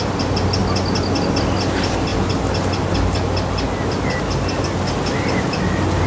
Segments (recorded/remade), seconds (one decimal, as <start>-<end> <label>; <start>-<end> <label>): 0.0-0.6 remade; 0.6-1.3 recorded; 1.3-2.1 remade; 2.1-5.3 recorded; 5.3-6.1 remade